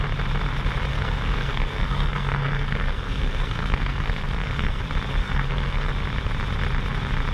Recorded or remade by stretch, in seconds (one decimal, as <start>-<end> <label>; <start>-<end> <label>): 0.0-0.9 recorded; 0.9-4.8 remade; 4.8-5.2 recorded; 5.2-5.9 remade; 5.9-7.3 recorded